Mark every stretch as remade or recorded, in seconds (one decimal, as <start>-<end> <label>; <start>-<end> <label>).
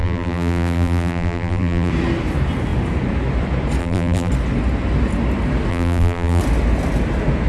0.0-1.9 remade; 1.9-3.8 recorded; 3.8-4.3 remade; 4.3-5.7 recorded; 5.7-6.4 remade; 6.4-7.5 recorded